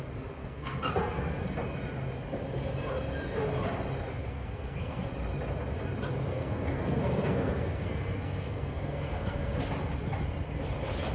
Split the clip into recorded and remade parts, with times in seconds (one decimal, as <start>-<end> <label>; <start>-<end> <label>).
0.0-0.4 recorded; 0.4-1.4 remade; 1.4-4.1 recorded; 4.1-5.1 remade; 5.1-6.3 recorded; 6.3-9.6 remade; 9.6-11.1 recorded